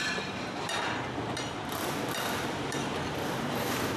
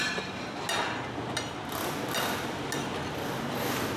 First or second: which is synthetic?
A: first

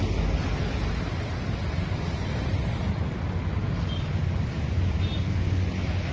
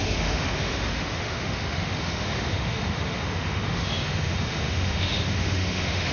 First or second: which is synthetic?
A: second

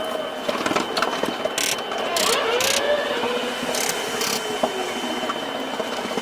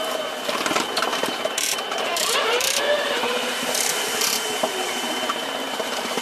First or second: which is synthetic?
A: second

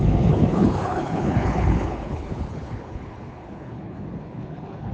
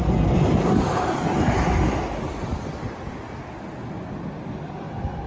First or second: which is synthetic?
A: first